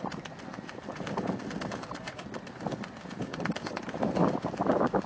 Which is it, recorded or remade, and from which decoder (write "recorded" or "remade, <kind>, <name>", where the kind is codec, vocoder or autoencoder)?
recorded